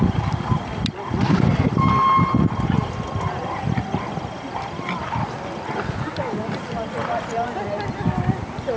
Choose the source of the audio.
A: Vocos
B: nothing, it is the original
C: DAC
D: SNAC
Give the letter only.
B